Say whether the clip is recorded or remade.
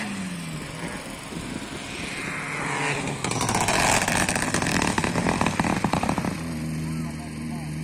recorded